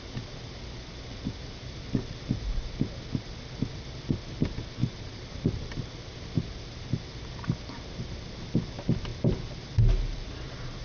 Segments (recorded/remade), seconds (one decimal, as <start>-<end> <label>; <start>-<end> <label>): 0.0-10.8 recorded